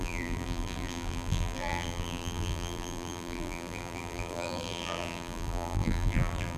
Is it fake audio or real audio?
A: fake